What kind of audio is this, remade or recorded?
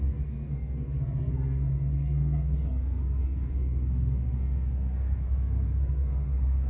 remade